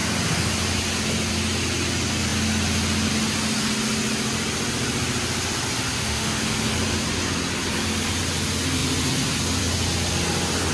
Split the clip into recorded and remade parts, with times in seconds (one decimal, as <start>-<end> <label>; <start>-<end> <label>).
0.0-5.9 recorded; 5.9-6.4 remade; 6.4-10.7 recorded